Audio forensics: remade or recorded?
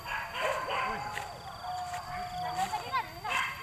recorded